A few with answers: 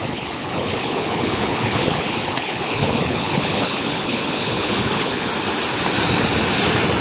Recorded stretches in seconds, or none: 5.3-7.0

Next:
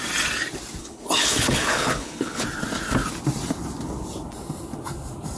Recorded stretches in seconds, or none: 0.0-0.8; 2.4-5.4

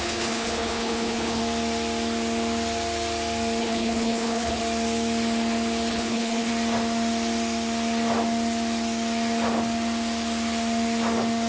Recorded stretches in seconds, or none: 1.4-3.6; 4.6-5.9; 6.5-11.5